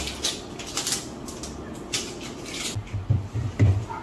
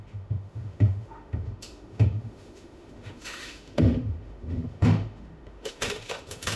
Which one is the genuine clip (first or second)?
first